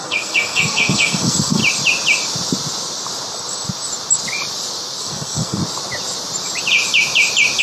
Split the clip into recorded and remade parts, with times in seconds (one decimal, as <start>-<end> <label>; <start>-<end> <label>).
0.0-1.6 remade; 1.6-5.0 recorded; 5.0-5.6 remade; 5.6-7.6 recorded